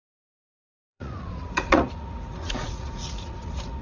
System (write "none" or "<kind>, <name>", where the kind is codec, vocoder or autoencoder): vocoder, Vocos